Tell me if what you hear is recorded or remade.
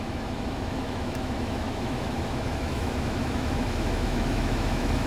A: remade